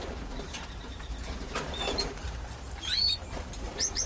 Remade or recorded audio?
remade